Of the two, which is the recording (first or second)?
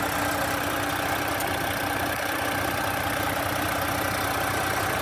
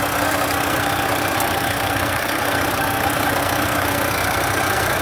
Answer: first